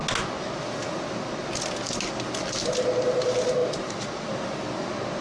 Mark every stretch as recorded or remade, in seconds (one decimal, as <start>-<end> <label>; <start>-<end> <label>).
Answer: 0.0-3.6 recorded; 3.6-4.3 remade; 4.3-5.2 recorded